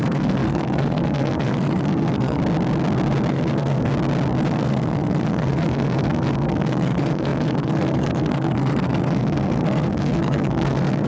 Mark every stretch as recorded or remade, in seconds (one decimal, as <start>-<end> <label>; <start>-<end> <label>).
0.0-2.4 remade; 2.4-3.3 recorded; 3.3-3.9 remade; 3.9-4.5 recorded; 4.5-11.1 remade